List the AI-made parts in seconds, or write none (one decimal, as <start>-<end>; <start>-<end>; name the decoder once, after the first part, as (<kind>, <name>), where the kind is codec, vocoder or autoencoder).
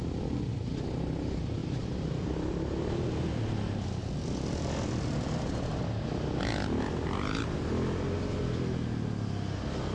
1.6-2.3 (vocoder, BigVGAN v2); 4.0-5.9